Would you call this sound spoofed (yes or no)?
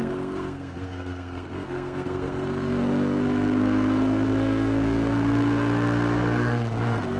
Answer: yes